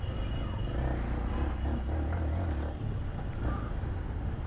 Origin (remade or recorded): recorded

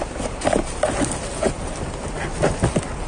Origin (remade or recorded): recorded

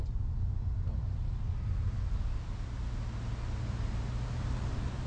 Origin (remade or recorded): recorded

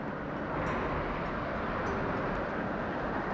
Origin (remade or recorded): recorded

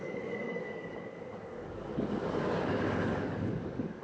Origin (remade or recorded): remade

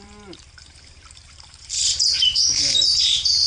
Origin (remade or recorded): remade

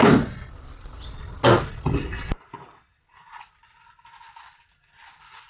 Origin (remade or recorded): recorded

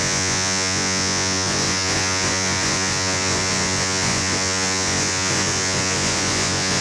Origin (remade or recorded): remade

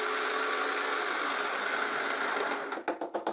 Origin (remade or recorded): recorded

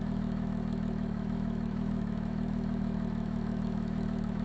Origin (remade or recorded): remade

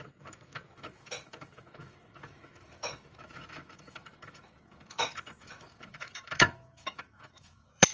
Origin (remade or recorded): remade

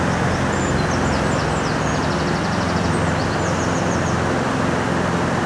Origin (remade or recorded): recorded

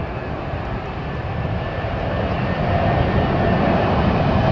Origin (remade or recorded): remade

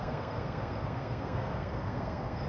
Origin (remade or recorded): remade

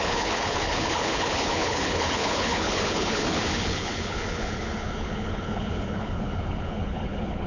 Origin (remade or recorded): remade